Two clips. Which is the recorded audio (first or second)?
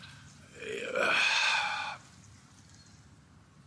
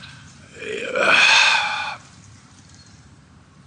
first